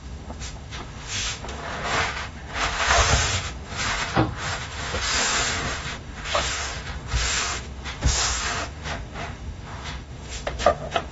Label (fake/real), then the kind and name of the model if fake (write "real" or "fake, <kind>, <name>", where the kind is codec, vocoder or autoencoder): fake, autoencoder, DAC-VAE